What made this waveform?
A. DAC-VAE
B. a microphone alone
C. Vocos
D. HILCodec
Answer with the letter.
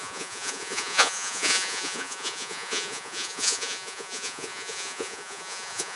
C